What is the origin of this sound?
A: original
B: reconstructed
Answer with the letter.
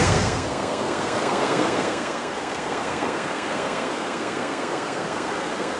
B